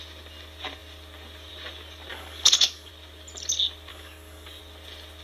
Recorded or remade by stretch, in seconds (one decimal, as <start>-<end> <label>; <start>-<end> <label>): 0.0-2.1 recorded; 2.1-2.9 remade; 2.9-3.9 recorded; 3.9-4.6 remade; 4.6-5.2 recorded